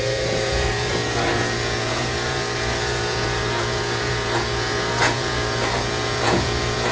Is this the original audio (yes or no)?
no